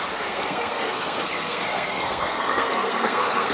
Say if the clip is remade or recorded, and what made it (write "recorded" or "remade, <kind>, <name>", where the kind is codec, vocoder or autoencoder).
remade, codec, SNAC